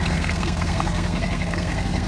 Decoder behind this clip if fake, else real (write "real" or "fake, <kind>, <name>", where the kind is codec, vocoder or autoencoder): fake, codec, SNAC